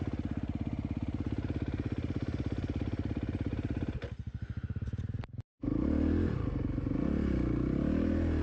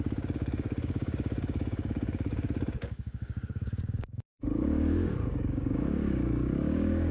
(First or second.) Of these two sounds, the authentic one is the first